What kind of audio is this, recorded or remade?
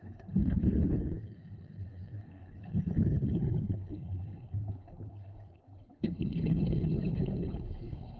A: remade